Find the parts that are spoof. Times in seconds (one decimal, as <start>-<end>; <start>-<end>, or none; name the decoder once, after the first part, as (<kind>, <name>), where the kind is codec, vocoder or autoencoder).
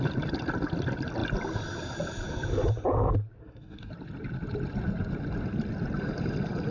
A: 3.4-3.9 (codec, SNAC)